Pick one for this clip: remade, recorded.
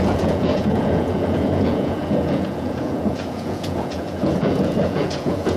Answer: remade